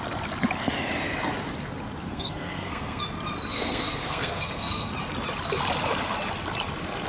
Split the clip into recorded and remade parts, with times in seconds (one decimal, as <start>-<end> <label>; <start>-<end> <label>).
0.0-2.1 recorded; 2.1-3.0 remade; 3.0-3.5 recorded; 3.5-4.9 remade; 4.9-7.1 recorded